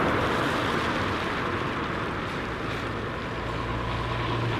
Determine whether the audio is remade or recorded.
recorded